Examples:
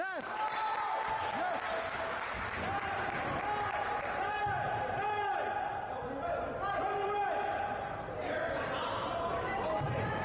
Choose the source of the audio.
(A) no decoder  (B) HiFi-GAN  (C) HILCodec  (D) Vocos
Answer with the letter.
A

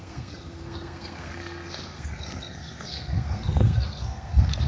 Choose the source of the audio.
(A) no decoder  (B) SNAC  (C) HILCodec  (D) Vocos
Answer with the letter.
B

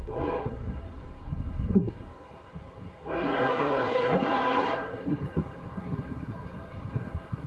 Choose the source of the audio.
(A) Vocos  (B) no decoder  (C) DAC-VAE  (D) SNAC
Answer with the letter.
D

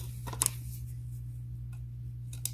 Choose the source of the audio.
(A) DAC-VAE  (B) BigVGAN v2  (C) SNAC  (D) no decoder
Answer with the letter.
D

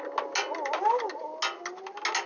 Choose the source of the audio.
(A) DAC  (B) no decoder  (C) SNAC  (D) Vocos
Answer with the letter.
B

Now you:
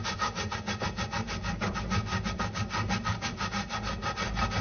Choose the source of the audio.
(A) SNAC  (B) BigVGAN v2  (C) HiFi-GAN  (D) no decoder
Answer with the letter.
D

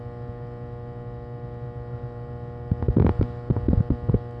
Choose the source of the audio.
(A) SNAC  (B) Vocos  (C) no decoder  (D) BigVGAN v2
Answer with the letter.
C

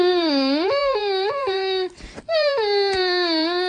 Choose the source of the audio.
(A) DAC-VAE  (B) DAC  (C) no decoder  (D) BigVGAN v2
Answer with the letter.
D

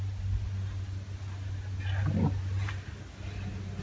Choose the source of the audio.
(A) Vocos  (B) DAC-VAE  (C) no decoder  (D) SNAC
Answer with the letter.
C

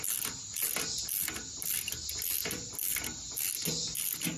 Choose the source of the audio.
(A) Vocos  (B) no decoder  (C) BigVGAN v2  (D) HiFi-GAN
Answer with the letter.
B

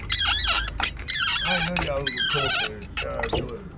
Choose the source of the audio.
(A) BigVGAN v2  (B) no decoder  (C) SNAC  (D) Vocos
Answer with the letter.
B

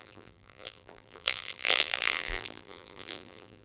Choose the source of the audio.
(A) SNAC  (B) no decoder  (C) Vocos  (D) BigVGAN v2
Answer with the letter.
D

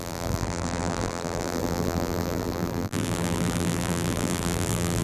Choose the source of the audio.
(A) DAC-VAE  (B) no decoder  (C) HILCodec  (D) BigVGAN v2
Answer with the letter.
D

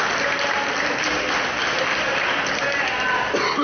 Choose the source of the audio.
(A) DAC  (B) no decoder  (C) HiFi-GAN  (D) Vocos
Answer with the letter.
B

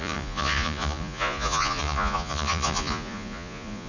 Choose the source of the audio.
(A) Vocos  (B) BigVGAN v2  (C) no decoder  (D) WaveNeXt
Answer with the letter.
A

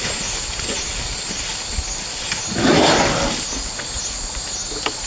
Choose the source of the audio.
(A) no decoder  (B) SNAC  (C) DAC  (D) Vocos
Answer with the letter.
A